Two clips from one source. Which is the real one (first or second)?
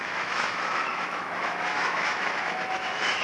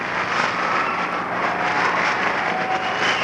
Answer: second